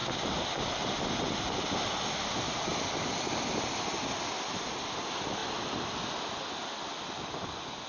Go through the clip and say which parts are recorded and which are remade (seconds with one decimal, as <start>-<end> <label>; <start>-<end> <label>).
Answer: 0.0-7.9 recorded